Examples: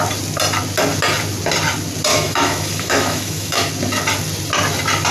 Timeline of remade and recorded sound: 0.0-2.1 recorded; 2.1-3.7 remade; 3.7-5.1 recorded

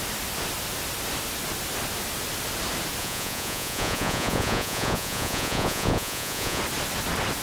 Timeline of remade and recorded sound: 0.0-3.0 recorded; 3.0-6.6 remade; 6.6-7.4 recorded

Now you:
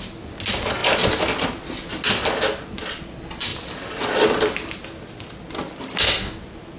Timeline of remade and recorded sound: 0.0-6.8 recorded

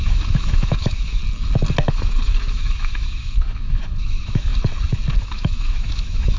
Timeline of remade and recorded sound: 0.0-1.2 remade; 1.2-1.9 recorded; 1.9-4.5 remade; 4.5-5.2 recorded; 5.2-6.4 remade

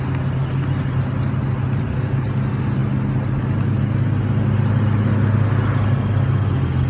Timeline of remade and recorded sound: 0.0-6.9 recorded